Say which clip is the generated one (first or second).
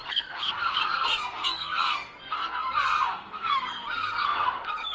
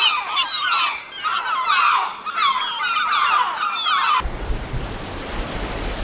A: first